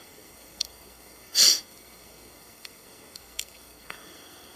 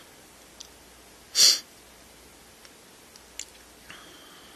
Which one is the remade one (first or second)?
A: first